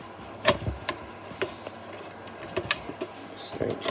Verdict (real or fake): real